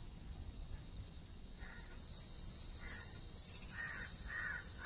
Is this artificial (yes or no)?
yes